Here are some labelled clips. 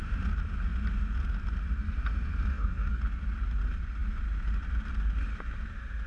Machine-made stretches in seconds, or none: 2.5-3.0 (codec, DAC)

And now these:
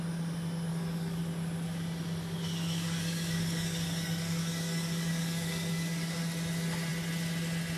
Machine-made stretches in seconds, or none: 0.7-1.2 (codec, DAC); 2.2-6.2

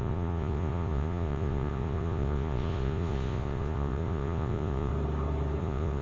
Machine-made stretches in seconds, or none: 0.0-4.9 (vocoder, Vocos); 5.6-6.0

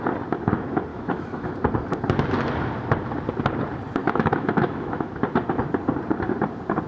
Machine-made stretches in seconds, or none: 0.9-1.5 (autoencoder, DAC-VAE); 4.0-5.1